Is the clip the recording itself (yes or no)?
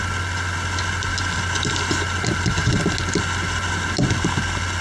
yes